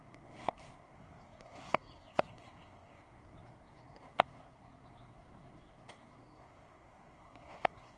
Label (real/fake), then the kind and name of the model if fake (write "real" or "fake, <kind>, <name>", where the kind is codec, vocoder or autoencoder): fake, codec, SNAC